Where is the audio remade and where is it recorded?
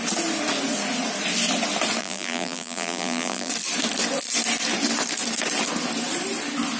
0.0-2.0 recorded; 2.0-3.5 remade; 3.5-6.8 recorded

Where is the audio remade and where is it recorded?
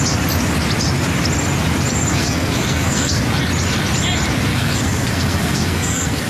0.0-2.1 recorded; 2.1-3.2 remade; 3.2-4.5 recorded; 4.5-6.3 remade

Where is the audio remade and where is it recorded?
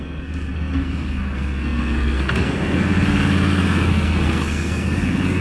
0.0-5.4 remade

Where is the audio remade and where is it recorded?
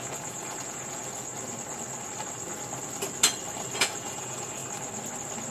0.0-1.2 remade; 1.2-3.8 recorded; 3.8-4.6 remade; 4.6-5.5 recorded